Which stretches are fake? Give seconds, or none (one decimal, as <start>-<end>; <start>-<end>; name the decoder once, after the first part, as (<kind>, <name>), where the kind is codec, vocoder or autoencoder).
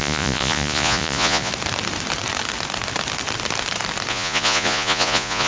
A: 0.0-1.5 (vocoder, Vocos); 4.1-5.5